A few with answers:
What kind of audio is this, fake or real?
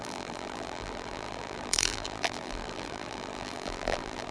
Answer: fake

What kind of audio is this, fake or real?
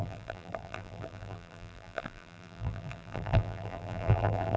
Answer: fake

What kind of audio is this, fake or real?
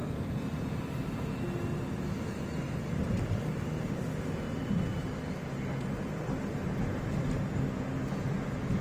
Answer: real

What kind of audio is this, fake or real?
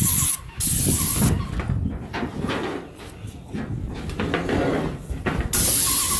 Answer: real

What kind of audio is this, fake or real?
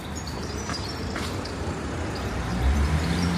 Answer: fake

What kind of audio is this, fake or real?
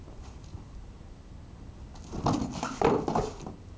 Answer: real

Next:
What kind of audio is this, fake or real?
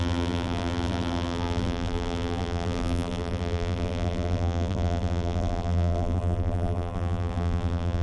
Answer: fake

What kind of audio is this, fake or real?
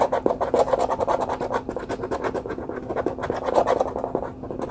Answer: real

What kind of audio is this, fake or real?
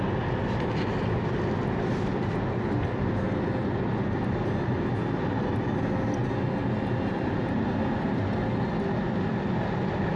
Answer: real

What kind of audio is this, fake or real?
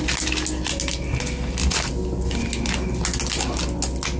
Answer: real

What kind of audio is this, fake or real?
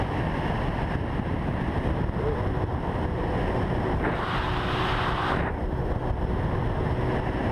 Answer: real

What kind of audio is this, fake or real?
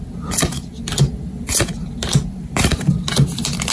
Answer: real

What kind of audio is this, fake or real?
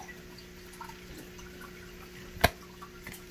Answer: real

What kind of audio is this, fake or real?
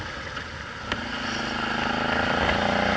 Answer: real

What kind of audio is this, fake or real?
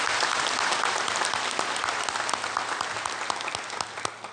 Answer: real